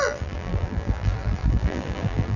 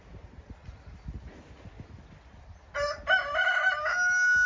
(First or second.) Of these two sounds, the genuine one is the second